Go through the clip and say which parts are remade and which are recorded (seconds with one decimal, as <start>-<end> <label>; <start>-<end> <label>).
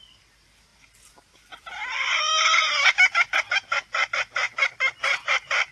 0.0-5.7 recorded